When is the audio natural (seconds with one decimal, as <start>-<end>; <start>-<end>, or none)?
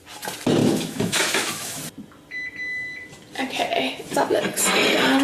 0.0-0.6; 1.8-5.2